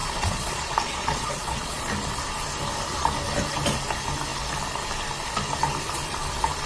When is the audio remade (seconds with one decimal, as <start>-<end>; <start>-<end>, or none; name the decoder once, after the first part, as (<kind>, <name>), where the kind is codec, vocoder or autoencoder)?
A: 0.0-1.9 (vocoder, Vocos)